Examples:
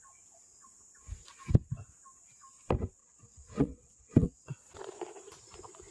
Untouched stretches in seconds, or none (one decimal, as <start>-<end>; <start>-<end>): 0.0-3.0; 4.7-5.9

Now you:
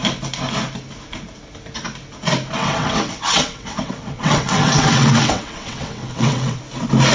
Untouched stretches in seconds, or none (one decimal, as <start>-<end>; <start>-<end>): 0.0-2.6; 6.6-7.1

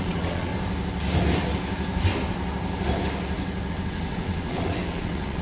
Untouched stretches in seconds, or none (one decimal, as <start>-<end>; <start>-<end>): 0.5-3.7

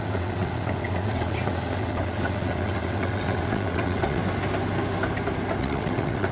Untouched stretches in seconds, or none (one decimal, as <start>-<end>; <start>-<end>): 4.2-5.6

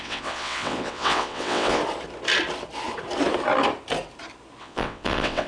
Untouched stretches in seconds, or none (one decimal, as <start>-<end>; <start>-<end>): 1.8-4.6

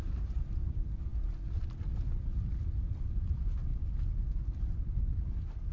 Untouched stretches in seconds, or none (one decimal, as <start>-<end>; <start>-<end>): 0.0-5.7

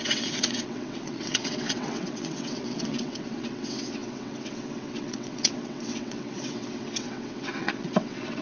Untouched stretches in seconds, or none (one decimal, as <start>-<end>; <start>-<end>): none